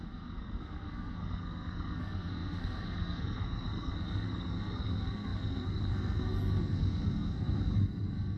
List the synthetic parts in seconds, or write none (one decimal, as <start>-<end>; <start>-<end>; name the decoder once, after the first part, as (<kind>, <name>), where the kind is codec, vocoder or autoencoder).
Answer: 0.0-8.4 (codec, SNAC)